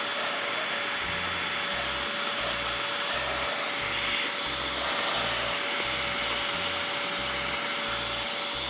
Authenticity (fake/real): real